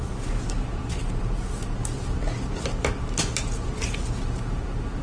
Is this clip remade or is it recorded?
recorded